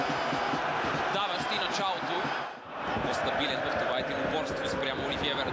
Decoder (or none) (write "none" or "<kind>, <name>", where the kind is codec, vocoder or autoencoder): none